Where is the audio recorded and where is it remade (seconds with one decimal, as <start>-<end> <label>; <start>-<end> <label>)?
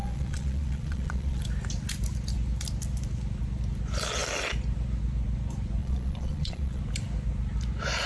0.0-1.4 remade; 1.4-5.8 recorded; 5.8-6.8 remade; 6.8-8.1 recorded